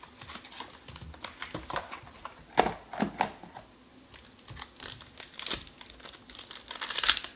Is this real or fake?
real